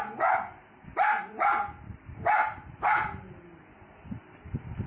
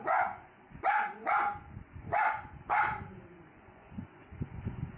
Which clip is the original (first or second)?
first